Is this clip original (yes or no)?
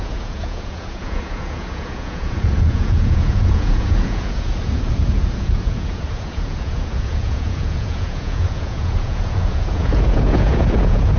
no